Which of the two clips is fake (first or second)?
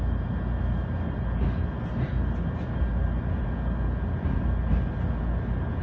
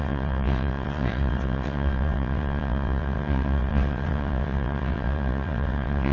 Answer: second